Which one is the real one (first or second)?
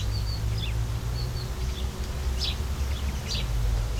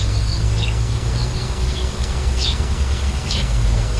first